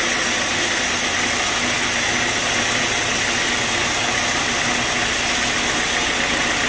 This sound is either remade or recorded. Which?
recorded